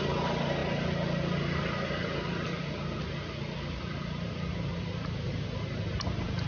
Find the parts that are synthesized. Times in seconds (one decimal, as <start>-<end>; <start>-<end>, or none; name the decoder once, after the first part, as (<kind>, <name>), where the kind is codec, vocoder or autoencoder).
none